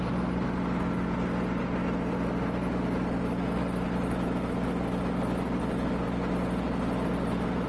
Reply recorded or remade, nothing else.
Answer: recorded